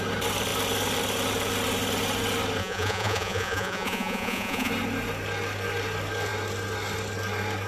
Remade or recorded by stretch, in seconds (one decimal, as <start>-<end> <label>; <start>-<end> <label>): 0.0-2.6 recorded; 2.6-4.7 remade; 4.7-7.7 recorded

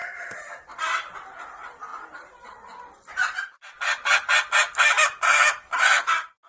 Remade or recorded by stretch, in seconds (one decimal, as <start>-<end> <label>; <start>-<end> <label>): 0.0-6.5 recorded